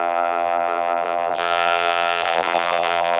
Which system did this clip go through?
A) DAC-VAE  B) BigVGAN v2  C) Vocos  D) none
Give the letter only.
B